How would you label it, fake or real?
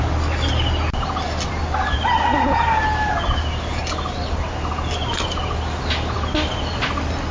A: real